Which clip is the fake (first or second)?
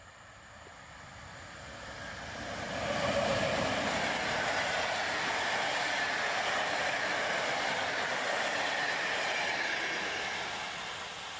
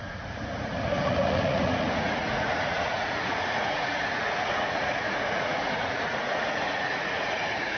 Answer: second